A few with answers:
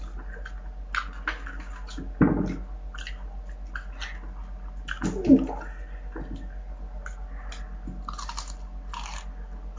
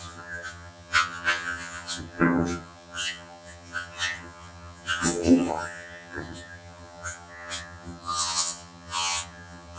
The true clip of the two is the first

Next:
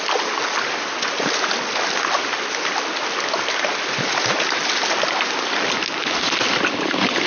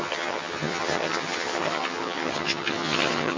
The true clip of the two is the first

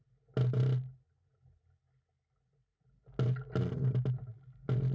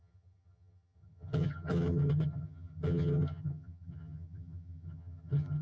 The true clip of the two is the first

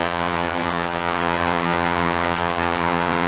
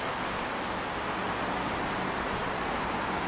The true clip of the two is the second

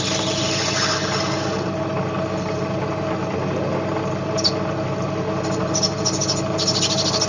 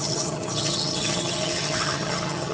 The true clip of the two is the first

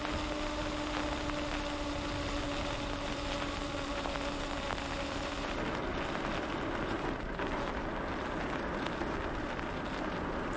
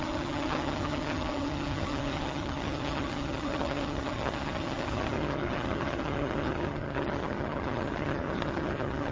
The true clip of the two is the first